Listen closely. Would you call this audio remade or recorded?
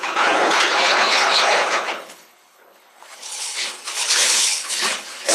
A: remade